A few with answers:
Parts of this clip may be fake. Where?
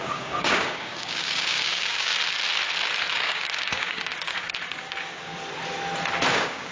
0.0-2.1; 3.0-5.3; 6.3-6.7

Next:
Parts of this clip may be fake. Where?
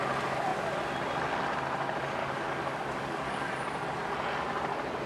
2.2-3.5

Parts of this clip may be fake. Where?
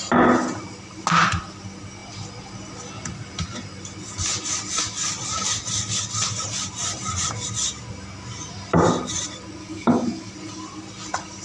9.6-10.3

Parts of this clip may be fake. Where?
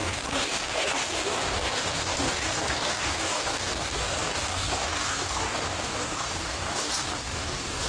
0.0-7.9